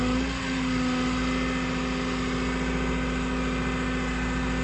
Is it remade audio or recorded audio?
recorded